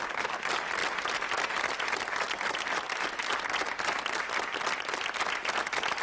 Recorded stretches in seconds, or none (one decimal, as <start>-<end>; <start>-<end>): 0.0-6.0